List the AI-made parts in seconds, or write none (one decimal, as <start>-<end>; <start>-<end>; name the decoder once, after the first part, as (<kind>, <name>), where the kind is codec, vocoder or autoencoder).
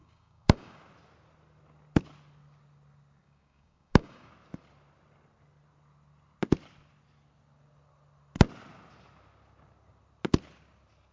0.0-0.8 (codec, DAC); 3.2-4.3